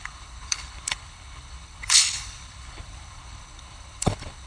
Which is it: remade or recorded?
remade